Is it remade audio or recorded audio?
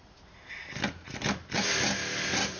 recorded